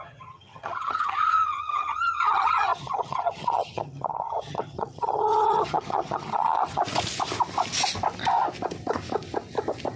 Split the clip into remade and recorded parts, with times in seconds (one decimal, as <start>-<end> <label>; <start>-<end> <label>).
0.0-6.8 remade; 6.8-10.0 recorded